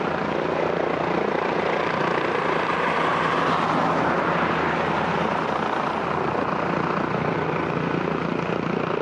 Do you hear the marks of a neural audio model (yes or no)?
no